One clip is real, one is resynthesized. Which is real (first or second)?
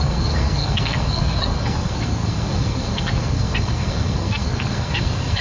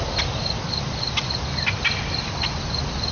second